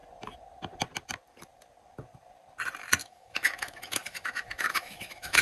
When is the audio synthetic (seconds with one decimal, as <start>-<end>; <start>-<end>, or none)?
3.0-5.4